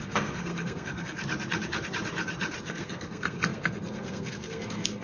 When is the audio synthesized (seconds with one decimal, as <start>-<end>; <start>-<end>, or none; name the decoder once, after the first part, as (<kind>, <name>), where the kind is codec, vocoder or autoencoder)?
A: 0.0-1.2 (codec, SNAC); 2.6-5.0